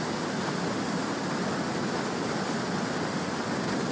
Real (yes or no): yes